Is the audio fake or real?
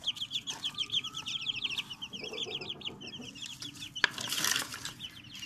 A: real